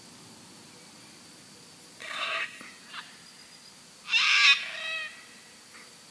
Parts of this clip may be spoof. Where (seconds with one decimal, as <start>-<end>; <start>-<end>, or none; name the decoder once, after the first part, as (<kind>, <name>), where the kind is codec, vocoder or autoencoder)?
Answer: 2.0-2.6 (codec, SNAC)